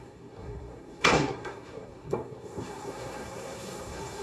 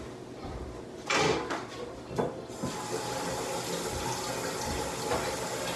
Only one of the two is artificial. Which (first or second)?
first